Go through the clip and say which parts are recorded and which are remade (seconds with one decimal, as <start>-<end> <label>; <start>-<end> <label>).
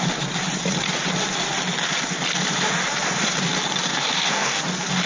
0.0-3.9 recorded; 3.9-4.6 remade; 4.6-5.1 recorded